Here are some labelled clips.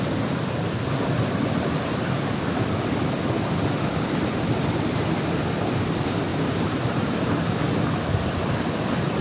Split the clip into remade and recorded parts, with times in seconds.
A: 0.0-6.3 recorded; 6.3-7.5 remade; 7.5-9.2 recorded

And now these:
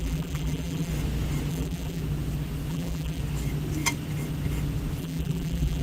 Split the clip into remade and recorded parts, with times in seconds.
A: 0.0-0.9 remade; 0.9-1.5 recorded; 1.5-2.0 remade; 2.0-2.7 recorded; 2.7-3.2 remade; 3.2-5.0 recorded; 5.0-5.8 remade

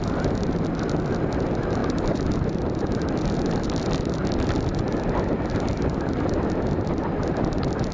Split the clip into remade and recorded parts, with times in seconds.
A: 0.0-1.8 recorded; 1.8-6.5 remade; 6.5-7.9 recorded